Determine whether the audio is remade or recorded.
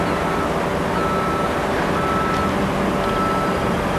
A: recorded